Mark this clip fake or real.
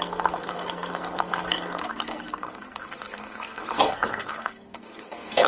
fake